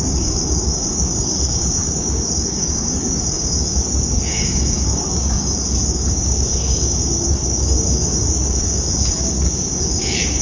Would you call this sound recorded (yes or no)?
no